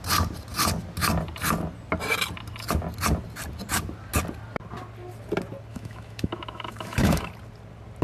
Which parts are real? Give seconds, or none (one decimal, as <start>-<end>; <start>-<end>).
0.0-5.7; 7.3-8.0